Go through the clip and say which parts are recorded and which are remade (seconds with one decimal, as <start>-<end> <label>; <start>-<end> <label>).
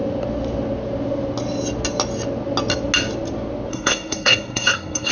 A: 0.0-3.7 recorded; 3.7-5.1 remade